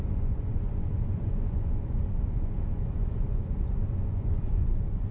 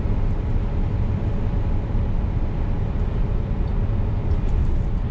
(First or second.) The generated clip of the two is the first